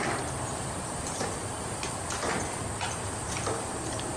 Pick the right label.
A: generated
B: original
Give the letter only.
A